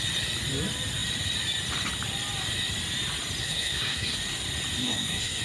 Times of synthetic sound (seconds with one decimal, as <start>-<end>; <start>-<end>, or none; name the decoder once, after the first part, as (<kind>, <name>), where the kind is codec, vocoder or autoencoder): 3.4-4.2 (codec, SNAC); 4.8-5.4